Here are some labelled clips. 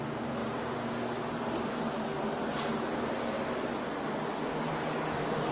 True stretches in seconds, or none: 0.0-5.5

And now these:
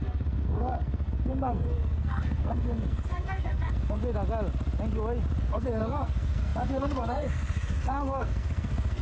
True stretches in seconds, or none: 4.0-5.4

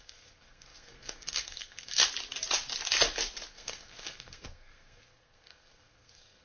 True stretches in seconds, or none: 2.0-3.5

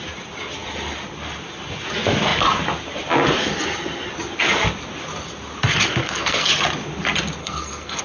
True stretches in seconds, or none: 0.0-6.0; 6.5-7.4